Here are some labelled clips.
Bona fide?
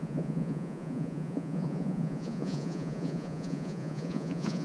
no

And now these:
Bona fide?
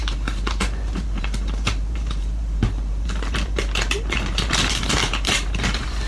no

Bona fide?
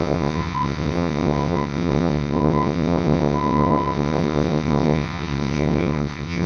no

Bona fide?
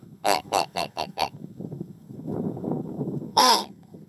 no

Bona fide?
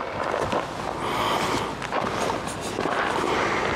yes